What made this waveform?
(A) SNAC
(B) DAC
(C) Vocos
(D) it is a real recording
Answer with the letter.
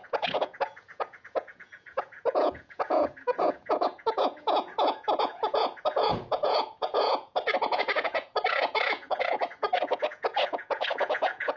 C